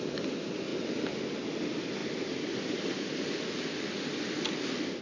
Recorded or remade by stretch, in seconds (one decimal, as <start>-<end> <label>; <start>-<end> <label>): 0.0-5.0 recorded

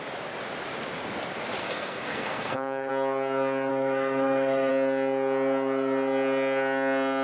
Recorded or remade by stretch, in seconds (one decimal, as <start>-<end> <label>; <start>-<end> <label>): 0.0-1.6 recorded; 1.6-2.9 remade; 2.9-3.7 recorded; 3.7-4.7 remade; 4.7-7.2 recorded

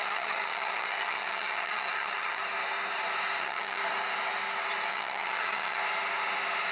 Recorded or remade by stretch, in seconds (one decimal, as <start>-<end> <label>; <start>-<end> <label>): 0.0-2.4 remade; 2.4-3.4 recorded; 3.4-3.8 remade; 3.8-4.9 recorded; 4.9-5.8 remade; 5.8-6.7 recorded

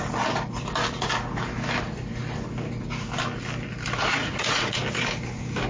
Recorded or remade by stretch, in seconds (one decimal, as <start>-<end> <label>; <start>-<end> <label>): 0.0-4.2 recorded; 4.2-4.8 remade; 4.8-5.7 recorded

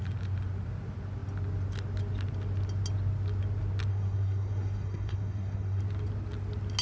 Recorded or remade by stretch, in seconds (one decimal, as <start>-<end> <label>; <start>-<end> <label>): 0.0-3.9 recorded; 3.9-5.8 remade; 5.8-6.8 recorded

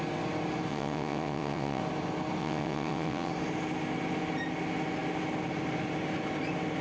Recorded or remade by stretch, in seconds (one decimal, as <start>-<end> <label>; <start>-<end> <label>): 0.0-0.7 recorded; 0.7-1.8 remade; 1.8-2.4 recorded; 2.4-3.3 remade; 3.3-6.8 recorded